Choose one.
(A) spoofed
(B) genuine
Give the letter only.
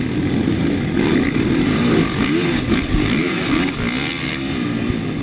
B